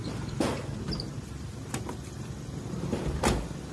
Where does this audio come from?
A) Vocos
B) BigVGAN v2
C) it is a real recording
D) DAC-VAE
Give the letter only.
C